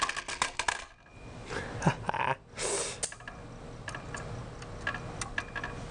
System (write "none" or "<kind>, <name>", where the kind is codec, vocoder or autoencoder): none